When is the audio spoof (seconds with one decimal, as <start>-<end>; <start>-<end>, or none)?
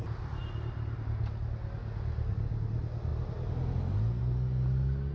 none